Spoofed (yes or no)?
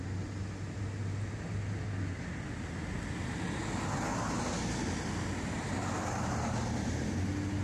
no